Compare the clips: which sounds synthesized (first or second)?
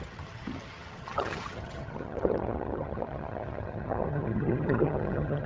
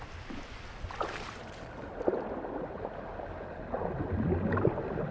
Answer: first